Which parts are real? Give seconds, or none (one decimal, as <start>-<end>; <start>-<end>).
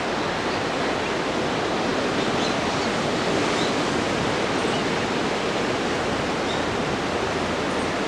0.0-8.1